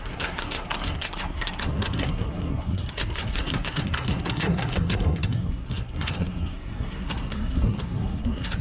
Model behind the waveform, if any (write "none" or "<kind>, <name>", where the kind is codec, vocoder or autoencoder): codec, SNAC